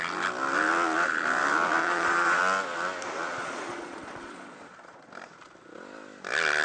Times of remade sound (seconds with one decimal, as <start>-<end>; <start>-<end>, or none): 1.8-2.4; 3.4-5.1